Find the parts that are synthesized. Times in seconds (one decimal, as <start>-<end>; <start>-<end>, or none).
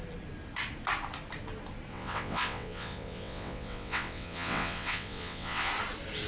1.9-5.7